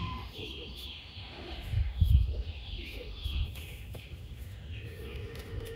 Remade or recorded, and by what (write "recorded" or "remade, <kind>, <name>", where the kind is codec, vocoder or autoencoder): remade, autoencoder, DAC-VAE